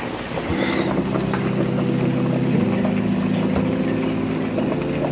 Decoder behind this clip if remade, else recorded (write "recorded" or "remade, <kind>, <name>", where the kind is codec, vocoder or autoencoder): recorded